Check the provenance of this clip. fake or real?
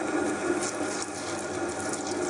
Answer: real